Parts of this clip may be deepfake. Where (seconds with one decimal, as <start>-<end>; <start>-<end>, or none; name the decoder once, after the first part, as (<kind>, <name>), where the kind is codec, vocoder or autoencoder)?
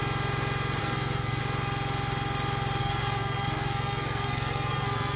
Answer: 0.8-1.4 (codec, SNAC); 2.8-5.2